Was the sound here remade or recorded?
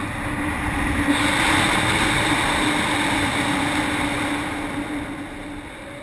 recorded